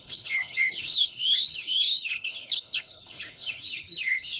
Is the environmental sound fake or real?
fake